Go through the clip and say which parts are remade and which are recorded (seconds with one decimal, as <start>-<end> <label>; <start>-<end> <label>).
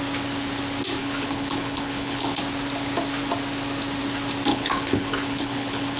0.0-1.0 recorded; 1.0-2.4 remade; 2.4-4.5 recorded; 4.5-6.0 remade